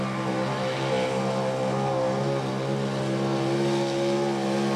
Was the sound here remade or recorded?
recorded